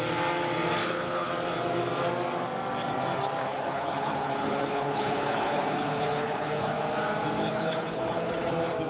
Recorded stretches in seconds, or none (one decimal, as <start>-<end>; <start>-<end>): 0.0-0.8; 1.3-3.4; 6.8-7.4; 8.5-8.9